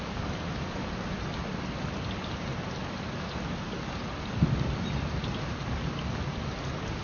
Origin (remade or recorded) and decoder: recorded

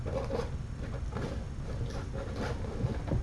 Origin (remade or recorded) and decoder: recorded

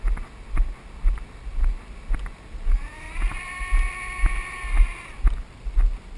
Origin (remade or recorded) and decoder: recorded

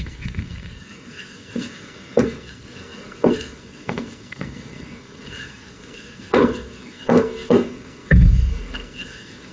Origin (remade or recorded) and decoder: remade, codec, SNAC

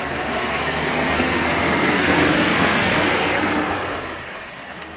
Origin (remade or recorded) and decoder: remade, codec, SNAC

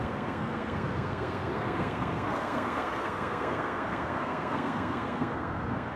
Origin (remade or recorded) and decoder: remade, codec, SNAC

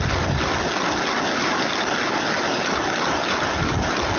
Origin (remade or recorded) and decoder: recorded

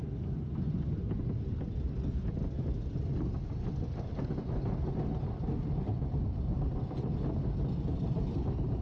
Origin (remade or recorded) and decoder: recorded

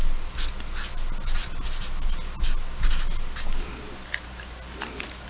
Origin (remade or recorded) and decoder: recorded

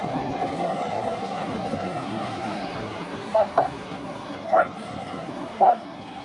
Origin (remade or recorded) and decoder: remade, codec, SNAC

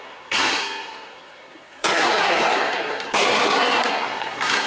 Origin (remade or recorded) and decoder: remade, codec, SNAC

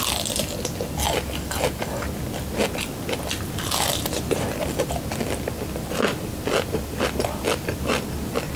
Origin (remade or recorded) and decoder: recorded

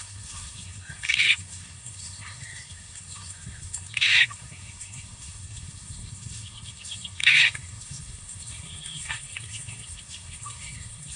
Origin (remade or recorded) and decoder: remade, codec, SNAC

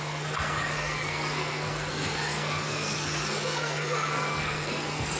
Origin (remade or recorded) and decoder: remade, codec, SNAC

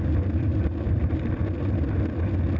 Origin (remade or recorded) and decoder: recorded